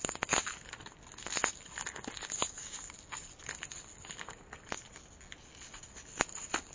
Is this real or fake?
real